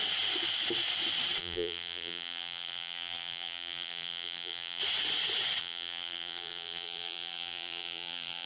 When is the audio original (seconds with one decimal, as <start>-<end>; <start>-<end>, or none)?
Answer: 0.0-1.4; 4.8-5.6